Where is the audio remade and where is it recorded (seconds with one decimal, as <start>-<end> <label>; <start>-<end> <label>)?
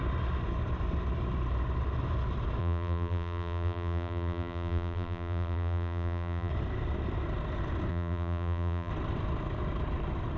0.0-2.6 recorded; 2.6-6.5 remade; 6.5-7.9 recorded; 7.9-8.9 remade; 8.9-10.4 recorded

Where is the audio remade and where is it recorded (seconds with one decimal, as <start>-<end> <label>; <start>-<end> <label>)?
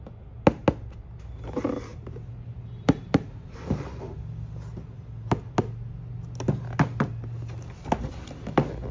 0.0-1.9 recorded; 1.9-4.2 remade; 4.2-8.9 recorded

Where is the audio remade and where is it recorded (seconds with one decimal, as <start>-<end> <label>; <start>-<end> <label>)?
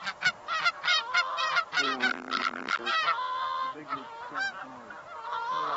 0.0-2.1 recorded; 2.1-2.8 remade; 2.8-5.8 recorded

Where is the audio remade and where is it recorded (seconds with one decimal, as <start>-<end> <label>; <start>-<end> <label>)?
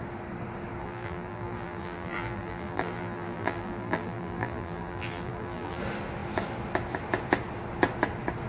0.0-0.8 recorded; 0.8-5.8 remade; 5.8-8.5 recorded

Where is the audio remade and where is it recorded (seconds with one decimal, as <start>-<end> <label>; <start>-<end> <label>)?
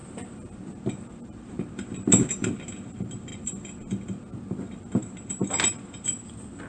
0.0-2.5 remade; 2.5-3.3 recorded; 3.3-4.2 remade; 4.2-5.0 recorded; 5.0-6.7 remade